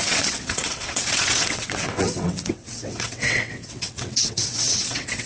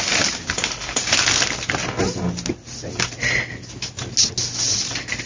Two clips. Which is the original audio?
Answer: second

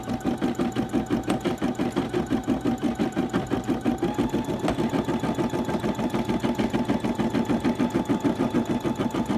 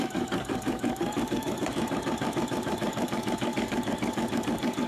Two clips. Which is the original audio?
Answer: first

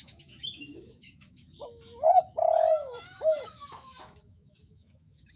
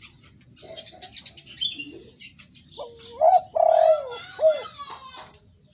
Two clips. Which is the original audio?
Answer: second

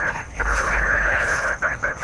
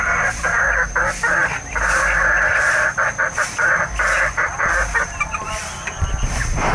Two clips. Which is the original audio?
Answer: second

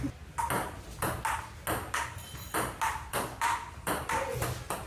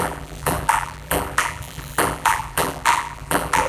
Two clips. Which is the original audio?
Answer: first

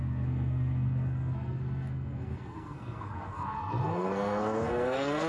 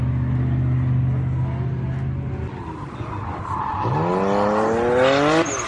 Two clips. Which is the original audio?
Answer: second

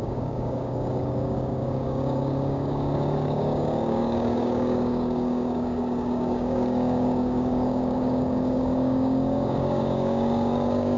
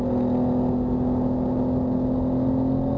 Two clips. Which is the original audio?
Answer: second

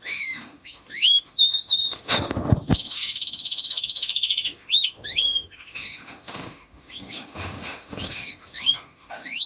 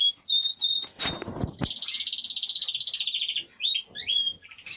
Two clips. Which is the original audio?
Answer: second